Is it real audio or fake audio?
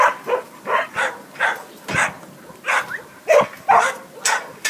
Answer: real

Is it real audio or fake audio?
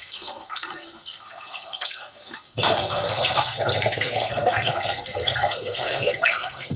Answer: fake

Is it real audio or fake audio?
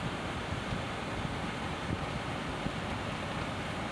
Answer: real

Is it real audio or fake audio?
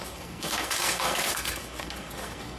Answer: fake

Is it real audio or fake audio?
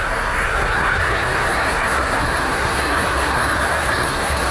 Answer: fake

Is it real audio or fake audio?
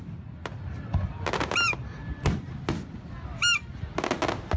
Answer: real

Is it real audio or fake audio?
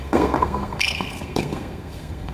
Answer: fake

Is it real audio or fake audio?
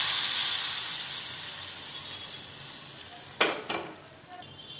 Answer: real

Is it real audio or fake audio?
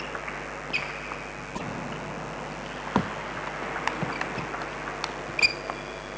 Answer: real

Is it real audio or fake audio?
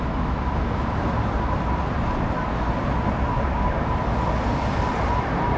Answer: real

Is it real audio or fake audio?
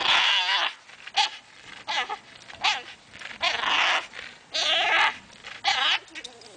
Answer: real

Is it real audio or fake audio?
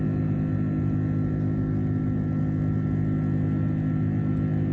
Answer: real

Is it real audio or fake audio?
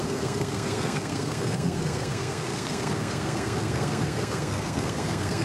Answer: fake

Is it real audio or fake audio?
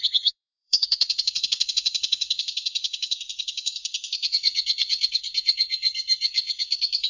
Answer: fake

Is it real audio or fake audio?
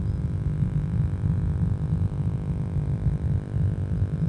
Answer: real